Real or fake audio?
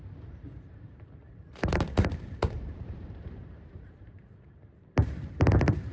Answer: fake